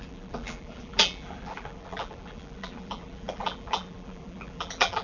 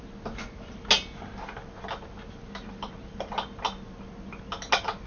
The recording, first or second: second